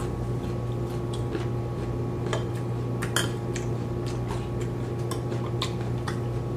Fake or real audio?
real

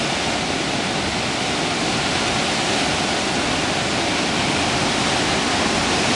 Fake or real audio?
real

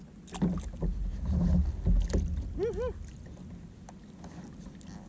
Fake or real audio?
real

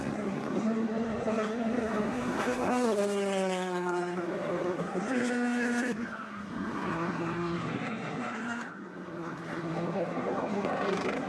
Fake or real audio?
fake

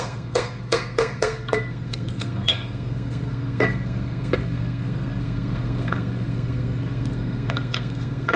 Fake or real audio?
fake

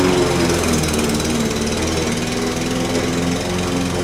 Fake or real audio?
real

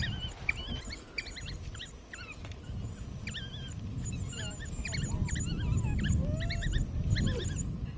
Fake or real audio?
real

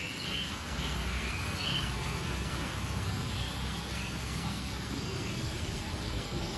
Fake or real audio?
fake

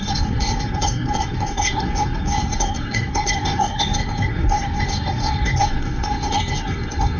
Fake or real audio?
fake